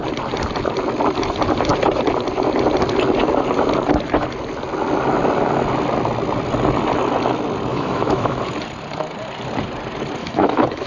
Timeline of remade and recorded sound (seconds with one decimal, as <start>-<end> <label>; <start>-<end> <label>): 0.0-7.7 recorded; 7.7-8.4 remade; 8.4-10.2 recorded; 10.2-10.9 remade